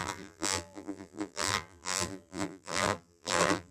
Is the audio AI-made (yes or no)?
yes